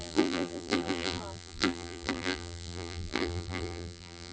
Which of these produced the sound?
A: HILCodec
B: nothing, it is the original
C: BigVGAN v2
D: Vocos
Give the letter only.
C